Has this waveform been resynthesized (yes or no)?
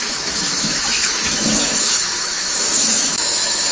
yes